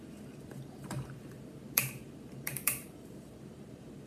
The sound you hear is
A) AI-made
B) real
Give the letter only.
A